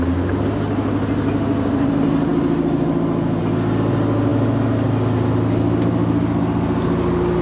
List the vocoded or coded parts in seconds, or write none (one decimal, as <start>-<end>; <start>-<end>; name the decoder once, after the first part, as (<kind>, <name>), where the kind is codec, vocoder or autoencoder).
none

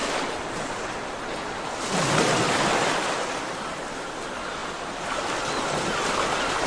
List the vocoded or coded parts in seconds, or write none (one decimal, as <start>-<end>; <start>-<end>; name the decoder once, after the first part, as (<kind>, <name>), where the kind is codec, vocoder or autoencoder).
none

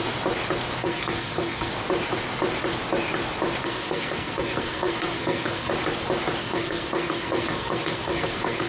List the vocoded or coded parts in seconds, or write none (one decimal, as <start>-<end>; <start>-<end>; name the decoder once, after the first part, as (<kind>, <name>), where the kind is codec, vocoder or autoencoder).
0.8-1.7 (codec, SNAC); 3.6-5.7; 6.4-8.7

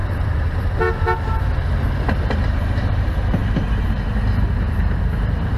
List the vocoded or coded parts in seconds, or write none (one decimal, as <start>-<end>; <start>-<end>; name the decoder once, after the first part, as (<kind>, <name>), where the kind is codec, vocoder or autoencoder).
none

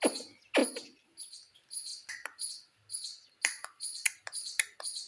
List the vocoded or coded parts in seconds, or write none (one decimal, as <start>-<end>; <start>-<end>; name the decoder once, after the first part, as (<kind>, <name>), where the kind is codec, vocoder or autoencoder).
none

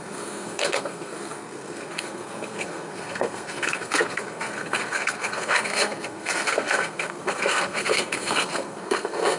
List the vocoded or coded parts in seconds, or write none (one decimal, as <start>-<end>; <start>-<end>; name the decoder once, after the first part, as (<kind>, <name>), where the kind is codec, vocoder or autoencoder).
0.0-9.4 (codec, SNAC)